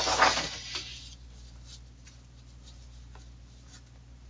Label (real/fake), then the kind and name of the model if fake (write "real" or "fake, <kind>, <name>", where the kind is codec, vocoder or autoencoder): real